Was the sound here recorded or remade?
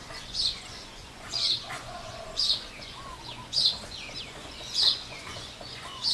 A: remade